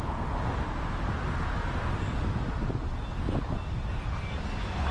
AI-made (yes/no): no